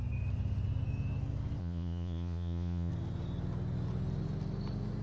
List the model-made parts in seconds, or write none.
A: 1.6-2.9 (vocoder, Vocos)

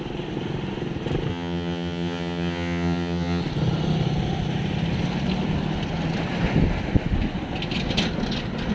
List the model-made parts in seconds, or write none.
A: 1.3-3.4 (vocoder, HiFi-GAN)

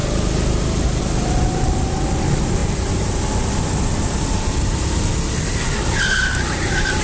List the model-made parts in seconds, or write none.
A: none

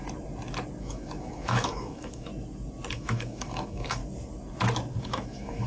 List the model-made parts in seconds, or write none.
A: 0.8-2.3 (autoencoder, DAC-VAE); 2.9-4.0; 5.0-5.7

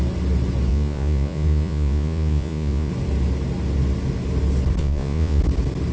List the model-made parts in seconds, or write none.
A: 0.7-2.9 (vocoder, Vocos); 4.8-5.4

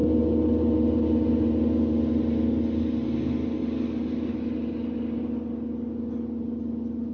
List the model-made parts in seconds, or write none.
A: none